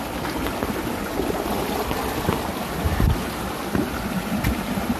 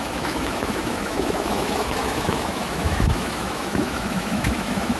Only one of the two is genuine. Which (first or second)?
first